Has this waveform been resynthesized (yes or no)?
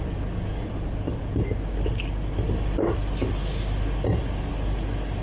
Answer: no